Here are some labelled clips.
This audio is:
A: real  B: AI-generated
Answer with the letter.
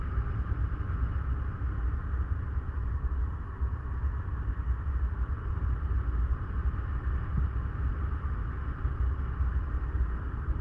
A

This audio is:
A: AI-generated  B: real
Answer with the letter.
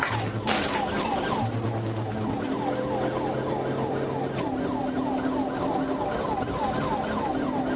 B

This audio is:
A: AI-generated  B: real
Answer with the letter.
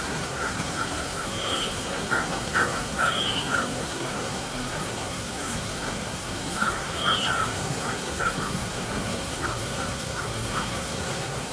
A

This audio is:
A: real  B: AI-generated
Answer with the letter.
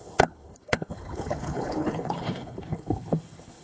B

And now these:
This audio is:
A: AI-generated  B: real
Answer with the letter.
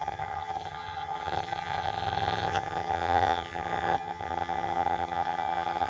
A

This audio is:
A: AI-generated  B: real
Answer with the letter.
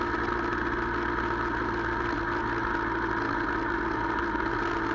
B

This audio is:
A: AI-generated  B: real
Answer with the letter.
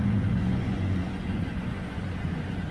A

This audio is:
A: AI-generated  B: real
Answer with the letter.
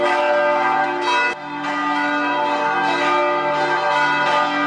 B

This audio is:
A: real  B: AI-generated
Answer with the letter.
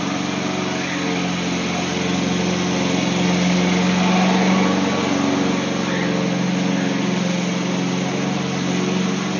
A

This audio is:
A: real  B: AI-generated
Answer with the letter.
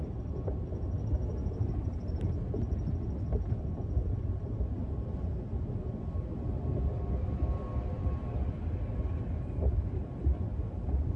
A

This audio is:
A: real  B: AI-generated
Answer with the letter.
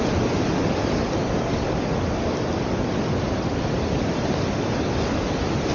A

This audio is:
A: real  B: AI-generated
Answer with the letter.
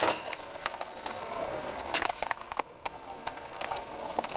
B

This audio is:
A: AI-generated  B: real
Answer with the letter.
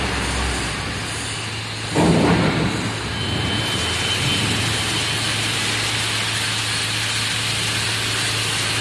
B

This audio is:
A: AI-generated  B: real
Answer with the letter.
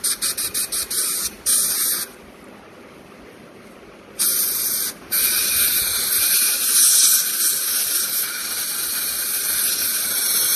B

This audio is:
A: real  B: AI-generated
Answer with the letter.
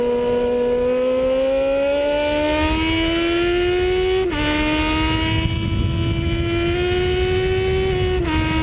A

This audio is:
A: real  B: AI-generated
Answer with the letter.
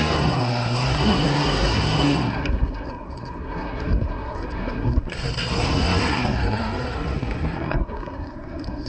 B